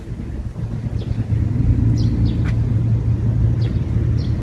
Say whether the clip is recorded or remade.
recorded